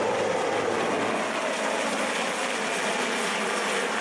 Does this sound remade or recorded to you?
recorded